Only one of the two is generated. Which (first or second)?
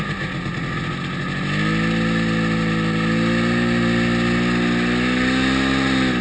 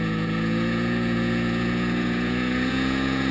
second